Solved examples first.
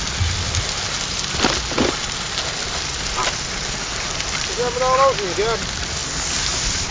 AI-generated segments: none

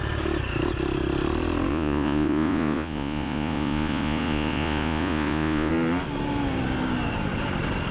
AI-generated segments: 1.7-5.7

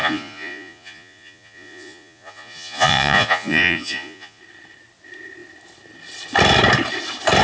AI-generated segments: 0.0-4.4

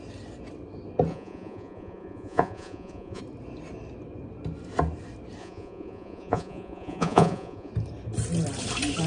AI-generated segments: 1.1-3.2; 5.4-7.7

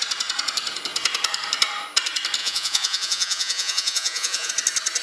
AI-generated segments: 2.4-4.5

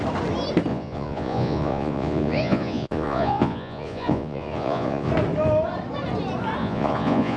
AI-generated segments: 0.7-5.1; 6.6-7.4

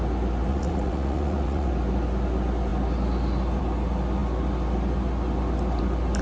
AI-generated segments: 0.5-1.7